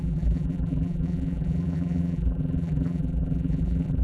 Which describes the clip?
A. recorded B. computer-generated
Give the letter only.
B